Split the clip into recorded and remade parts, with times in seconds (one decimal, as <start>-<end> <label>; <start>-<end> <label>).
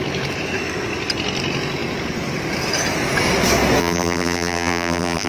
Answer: 0.0-3.8 recorded; 3.8-5.3 remade